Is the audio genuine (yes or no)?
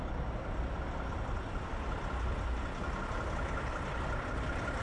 no